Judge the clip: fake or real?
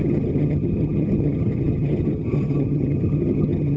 fake